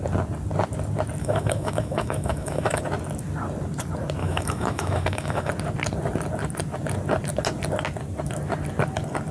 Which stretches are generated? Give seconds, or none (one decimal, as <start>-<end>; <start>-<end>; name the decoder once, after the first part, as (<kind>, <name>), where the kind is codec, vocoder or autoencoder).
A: 1.2-2.8 (autoencoder, DAC-VAE); 4.2-5.5